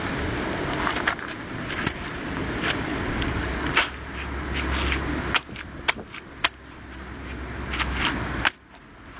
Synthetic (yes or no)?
no